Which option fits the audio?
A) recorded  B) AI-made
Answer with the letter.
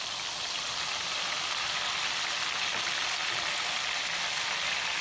A